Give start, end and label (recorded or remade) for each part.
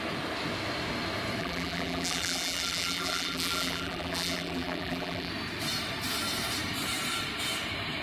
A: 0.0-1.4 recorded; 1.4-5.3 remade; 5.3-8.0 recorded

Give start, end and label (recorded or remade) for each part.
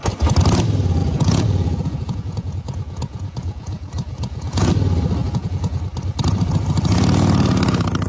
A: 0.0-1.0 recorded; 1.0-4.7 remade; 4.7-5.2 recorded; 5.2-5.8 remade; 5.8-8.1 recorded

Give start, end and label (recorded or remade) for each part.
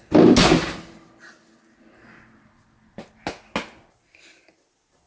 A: 0.0-5.1 recorded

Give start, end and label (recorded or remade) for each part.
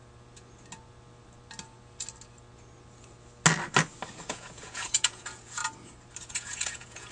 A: 0.0-4.3 recorded; 4.3-5.6 remade; 5.6-6.3 recorded; 6.3-7.1 remade